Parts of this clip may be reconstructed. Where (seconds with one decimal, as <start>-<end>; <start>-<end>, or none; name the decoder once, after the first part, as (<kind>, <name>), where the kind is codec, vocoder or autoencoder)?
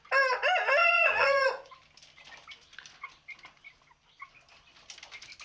0.8-1.7 (vocoder, Vocos)